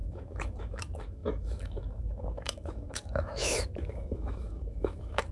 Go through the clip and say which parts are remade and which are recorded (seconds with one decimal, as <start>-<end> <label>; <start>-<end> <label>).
0.0-5.3 remade